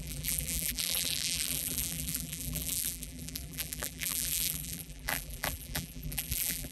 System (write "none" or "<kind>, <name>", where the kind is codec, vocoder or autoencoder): vocoder, BigVGAN v2